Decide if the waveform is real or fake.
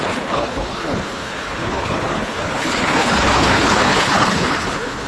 fake